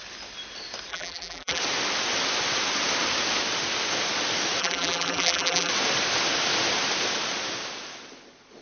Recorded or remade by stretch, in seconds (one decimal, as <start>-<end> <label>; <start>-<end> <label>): 0.0-0.9 recorded; 0.9-1.6 remade; 1.6-4.6 recorded; 4.6-5.7 remade; 5.7-8.6 recorded

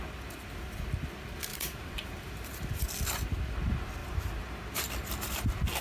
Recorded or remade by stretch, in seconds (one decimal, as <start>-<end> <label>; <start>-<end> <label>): 0.0-1.5 recorded; 1.5-2.7 remade; 2.7-4.0 recorded; 4.0-4.9 remade; 4.9-5.8 recorded

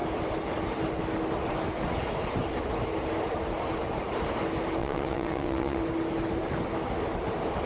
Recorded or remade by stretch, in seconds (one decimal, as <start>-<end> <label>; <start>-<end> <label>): 0.0-4.8 recorded; 4.8-5.8 remade; 5.8-7.7 recorded

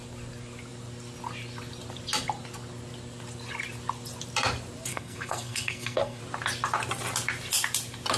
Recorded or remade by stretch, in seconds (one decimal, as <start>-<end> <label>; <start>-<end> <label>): 0.0-4.9 recorded; 4.9-6.2 remade; 6.2-8.2 recorded

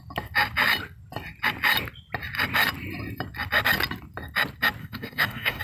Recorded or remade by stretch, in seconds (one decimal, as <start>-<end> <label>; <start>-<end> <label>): 0.0-4.8 recorded; 4.8-5.6 remade